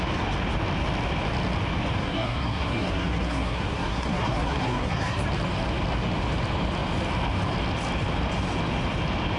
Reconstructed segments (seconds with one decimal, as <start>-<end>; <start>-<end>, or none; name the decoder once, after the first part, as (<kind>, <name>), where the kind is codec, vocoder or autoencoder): 2.0-5.2 (codec, SNAC)